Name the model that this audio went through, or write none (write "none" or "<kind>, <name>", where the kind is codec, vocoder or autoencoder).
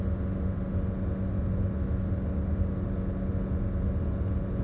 none